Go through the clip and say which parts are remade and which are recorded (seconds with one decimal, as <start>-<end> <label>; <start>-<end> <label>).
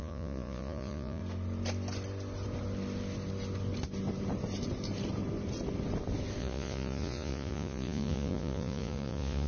0.0-1.2 remade; 1.2-6.4 recorded; 6.4-9.5 remade